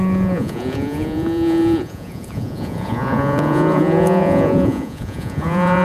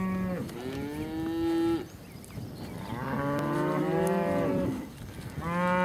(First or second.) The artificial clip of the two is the first